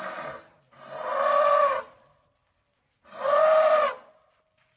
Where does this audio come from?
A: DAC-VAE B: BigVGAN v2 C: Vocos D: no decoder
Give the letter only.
D